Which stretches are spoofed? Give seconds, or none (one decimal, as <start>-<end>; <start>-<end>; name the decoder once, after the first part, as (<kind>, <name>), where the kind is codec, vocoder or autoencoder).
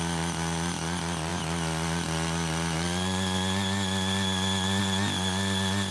none